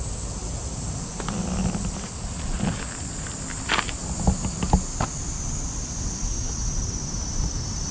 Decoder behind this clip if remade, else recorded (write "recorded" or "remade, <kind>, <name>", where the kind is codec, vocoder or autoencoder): recorded